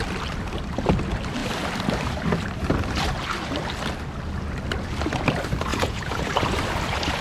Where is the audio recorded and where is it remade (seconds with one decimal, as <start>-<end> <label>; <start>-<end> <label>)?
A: 0.0-5.7 recorded; 5.7-6.3 remade; 6.3-7.2 recorded